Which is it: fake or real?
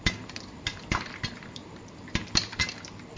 real